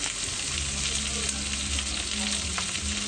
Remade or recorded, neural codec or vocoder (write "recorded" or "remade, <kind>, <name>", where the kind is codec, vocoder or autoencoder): recorded